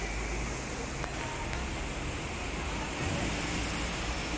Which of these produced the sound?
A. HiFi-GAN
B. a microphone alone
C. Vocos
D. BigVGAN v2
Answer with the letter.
B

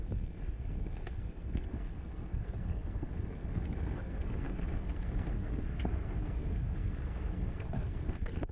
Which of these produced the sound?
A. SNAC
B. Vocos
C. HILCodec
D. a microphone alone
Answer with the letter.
A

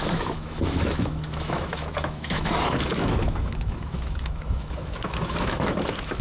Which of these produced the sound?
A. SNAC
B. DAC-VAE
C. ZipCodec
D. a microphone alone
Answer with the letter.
B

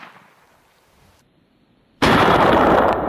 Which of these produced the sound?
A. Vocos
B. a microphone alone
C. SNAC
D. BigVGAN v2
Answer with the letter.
D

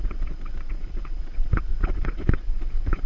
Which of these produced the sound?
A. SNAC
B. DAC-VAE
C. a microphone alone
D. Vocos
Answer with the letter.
D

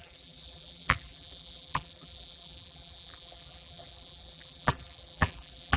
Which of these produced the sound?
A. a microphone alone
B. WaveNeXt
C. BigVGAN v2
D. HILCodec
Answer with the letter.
C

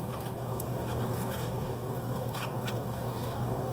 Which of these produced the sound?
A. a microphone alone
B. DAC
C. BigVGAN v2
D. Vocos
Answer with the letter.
B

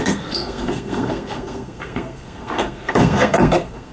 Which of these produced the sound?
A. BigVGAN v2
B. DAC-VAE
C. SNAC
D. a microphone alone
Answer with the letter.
C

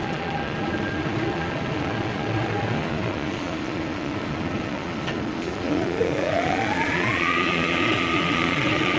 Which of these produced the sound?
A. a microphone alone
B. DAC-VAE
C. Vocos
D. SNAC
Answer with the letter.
C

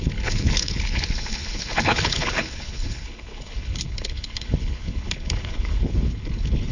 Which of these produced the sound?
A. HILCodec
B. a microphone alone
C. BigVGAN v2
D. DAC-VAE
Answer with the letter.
A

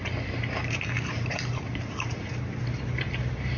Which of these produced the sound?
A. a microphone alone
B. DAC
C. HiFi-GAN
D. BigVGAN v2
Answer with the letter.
D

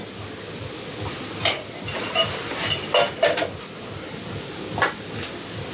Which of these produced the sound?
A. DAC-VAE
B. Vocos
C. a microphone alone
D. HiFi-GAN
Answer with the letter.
C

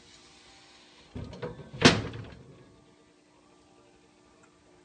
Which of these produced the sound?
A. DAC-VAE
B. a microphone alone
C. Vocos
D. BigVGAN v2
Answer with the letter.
B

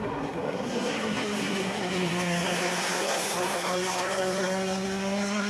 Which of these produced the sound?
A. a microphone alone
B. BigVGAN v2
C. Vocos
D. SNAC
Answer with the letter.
D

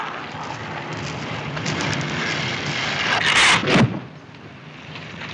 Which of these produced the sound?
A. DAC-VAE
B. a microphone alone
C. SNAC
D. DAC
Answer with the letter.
B